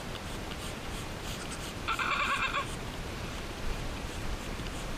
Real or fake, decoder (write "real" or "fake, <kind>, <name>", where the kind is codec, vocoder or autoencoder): fake, vocoder, BigVGAN v2